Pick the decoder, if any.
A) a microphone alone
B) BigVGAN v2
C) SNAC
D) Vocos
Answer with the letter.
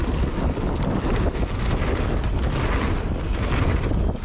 A